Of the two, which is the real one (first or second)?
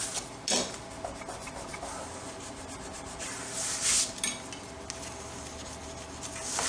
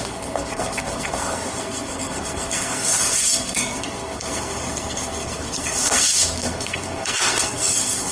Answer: first